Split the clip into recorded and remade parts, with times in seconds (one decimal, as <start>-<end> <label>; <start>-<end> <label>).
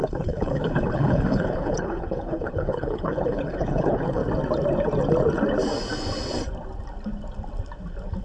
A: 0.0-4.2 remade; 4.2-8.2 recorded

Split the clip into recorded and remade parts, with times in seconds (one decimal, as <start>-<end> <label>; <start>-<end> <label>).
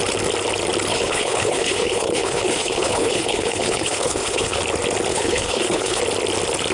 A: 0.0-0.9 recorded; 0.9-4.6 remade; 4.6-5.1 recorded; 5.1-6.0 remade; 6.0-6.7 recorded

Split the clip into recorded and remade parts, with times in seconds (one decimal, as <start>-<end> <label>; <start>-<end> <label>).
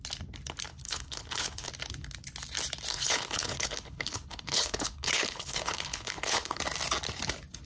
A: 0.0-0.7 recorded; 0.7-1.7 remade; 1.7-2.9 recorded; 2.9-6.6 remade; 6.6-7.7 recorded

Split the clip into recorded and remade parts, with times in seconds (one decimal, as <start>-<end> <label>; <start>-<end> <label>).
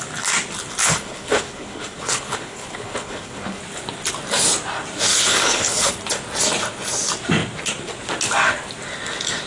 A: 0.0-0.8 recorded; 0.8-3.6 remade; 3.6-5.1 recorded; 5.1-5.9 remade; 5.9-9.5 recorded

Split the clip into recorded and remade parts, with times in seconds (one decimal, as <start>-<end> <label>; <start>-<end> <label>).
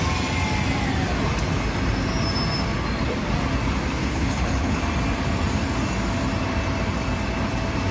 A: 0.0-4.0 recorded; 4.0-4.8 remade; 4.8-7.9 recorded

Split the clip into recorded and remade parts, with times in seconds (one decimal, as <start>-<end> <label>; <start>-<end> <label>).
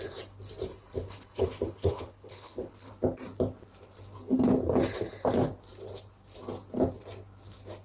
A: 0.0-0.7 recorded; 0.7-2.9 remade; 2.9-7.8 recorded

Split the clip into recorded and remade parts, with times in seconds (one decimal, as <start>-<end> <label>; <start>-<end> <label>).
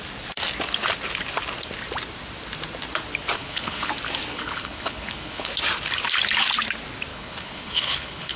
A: 0.0-3.4 recorded; 3.4-3.9 remade; 3.9-4.3 recorded; 4.3-5.5 remade; 5.5-7.1 recorded; 7.1-8.4 remade